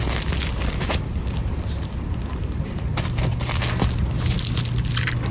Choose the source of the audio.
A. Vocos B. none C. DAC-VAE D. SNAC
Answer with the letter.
B